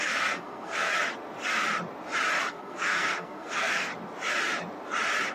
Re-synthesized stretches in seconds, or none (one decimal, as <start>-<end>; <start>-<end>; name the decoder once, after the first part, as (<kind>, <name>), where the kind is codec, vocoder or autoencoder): 0.0-0.9 (codec, SNAC); 2.5-3.9